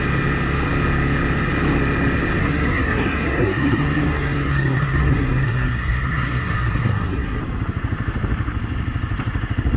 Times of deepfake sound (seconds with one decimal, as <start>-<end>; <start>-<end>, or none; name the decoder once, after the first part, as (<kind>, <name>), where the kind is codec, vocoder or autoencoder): 2.4-7.4 (codec, SNAC)

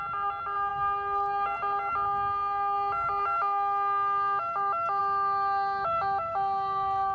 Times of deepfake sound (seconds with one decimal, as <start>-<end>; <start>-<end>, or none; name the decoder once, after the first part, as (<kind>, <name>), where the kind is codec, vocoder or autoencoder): none

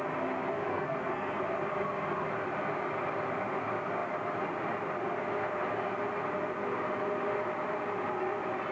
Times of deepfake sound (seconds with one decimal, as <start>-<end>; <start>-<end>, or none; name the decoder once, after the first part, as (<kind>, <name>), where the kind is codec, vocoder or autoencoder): 0.7-1.4 (codec, SNAC)

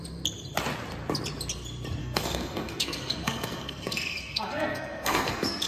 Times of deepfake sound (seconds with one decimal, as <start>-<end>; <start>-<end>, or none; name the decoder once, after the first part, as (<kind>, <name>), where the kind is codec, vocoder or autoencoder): 2.0-5.7 (codec, SNAC)

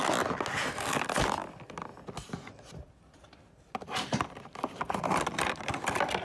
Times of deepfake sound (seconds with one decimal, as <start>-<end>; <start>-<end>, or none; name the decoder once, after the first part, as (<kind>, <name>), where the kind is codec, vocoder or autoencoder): none

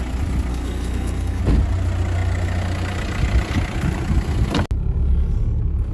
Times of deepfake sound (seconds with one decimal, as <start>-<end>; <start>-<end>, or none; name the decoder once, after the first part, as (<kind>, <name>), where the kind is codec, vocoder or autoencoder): 0.5-1.4 (codec, SNAC)

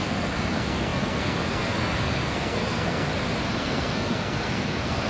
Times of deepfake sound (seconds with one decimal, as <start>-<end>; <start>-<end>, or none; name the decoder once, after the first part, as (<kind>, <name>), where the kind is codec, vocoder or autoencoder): 0.0-3.1 (codec, SNAC); 3.6-5.1

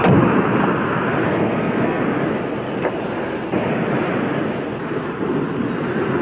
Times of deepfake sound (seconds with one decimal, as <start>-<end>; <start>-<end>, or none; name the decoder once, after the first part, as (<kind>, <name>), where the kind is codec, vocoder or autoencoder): 1.2-2.0 (codec, SNAC)